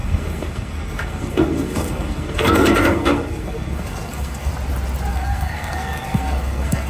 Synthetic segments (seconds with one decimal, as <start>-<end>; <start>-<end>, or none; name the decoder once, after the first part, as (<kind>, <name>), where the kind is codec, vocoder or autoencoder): 0.0-4.5 (codec, SNAC); 5.1-6.9